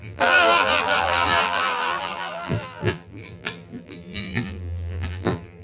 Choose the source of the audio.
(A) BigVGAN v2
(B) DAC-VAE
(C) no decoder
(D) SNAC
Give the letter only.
A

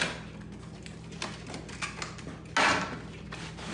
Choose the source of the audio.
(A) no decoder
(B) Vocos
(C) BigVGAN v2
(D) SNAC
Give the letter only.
A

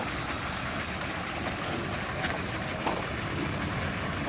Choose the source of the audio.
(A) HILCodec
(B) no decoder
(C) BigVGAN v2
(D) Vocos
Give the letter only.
B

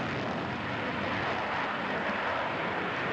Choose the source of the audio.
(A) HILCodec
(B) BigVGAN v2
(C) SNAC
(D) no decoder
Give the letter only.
D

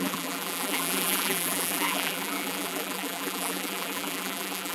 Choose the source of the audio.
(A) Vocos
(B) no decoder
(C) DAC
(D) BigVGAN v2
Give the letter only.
D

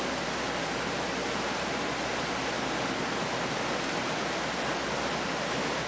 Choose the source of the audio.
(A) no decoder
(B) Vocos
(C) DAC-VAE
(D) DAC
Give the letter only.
A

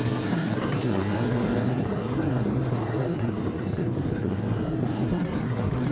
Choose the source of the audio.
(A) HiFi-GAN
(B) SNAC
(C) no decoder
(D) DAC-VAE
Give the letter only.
B